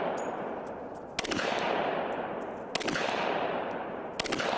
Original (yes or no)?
yes